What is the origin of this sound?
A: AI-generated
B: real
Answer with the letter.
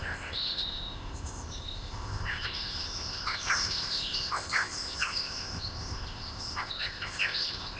A